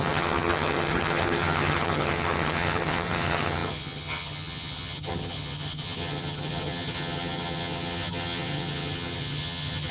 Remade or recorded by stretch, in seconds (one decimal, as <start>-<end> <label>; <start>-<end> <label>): 0.0-9.9 remade